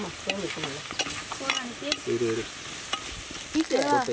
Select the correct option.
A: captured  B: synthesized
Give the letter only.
A